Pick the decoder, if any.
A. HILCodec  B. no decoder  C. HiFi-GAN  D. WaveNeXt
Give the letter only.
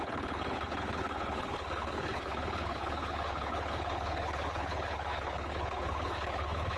A